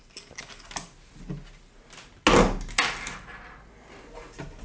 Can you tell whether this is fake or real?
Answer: real